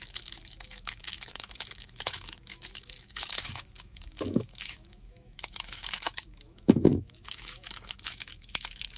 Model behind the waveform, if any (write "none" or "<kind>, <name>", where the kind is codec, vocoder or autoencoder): autoencoder, DAC-VAE